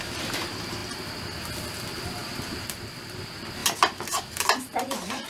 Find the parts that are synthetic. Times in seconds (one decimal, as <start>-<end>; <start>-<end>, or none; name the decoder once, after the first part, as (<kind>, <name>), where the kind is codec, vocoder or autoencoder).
2.2-3.2 (vocoder, BigVGAN v2); 3.6-5.3